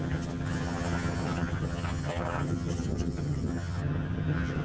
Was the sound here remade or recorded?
remade